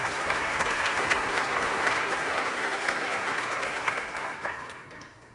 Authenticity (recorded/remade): remade